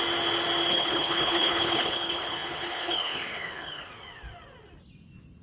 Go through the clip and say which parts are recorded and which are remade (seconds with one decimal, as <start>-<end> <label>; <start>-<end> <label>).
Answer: 0.0-0.7 recorded; 0.7-3.9 remade; 3.9-5.4 recorded